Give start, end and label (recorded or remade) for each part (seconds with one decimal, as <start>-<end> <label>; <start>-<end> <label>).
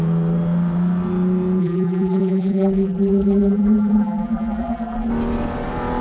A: 0.0-1.6 recorded; 1.6-5.1 remade; 5.1-6.0 recorded